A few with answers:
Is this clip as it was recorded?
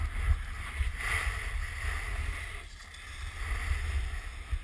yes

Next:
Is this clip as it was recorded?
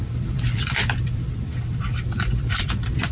no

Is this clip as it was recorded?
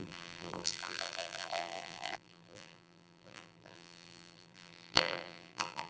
no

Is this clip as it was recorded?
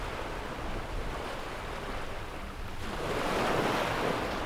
yes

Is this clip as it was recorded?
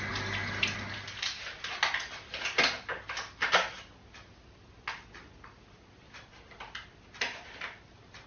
yes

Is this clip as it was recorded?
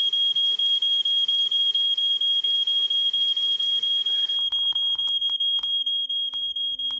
no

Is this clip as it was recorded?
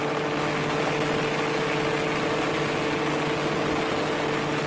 yes